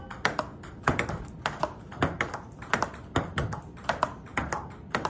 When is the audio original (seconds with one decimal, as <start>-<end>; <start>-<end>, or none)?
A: 0.0-5.1